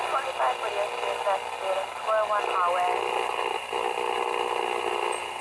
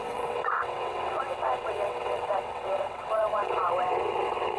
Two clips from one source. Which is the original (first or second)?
first